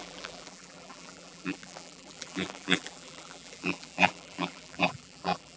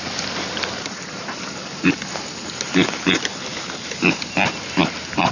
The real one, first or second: second